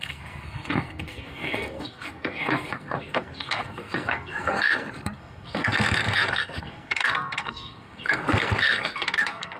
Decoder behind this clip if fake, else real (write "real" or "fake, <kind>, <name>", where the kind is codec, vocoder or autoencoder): fake, codec, SNAC